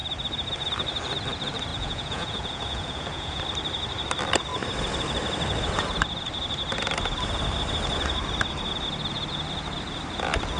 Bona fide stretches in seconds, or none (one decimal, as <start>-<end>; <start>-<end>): 0.0-1.7; 3.4-10.6

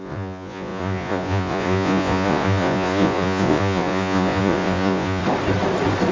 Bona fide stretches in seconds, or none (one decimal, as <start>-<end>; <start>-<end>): 5.2-6.1

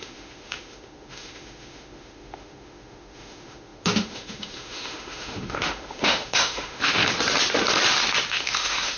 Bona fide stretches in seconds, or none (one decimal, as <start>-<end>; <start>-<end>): 7.0-8.3